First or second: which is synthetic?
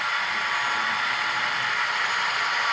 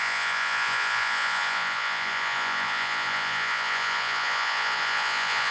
second